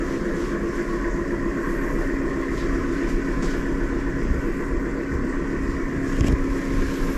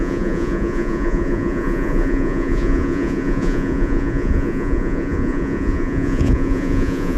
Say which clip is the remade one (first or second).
second